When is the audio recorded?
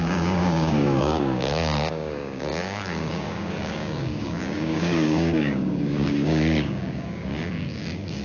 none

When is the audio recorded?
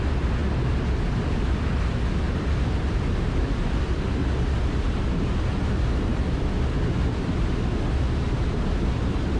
0.4-1.1; 4.2-5.4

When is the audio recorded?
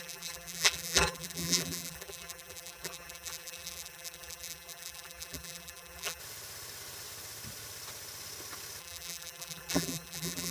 6.2-8.8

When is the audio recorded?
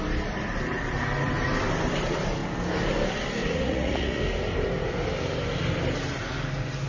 0.0-3.4; 4.2-6.9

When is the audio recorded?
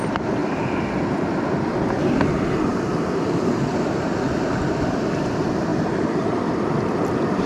0.4-1.0; 2.7-5.1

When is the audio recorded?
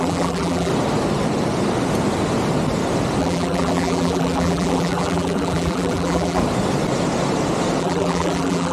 0.7-3.2; 6.4-7.8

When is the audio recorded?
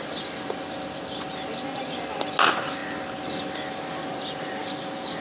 0.0-5.2